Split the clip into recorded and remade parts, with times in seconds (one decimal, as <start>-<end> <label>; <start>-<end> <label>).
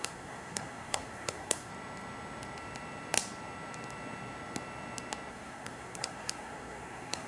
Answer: 0.0-1.7 remade; 1.7-5.3 recorded; 5.3-7.3 remade